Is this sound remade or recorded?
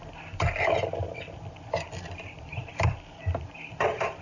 remade